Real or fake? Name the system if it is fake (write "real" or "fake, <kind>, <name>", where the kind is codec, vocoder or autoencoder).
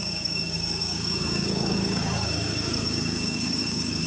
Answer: fake, codec, DAC